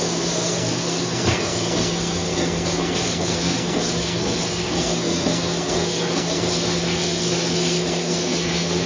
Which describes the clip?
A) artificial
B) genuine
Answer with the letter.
A